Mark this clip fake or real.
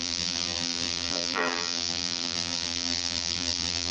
fake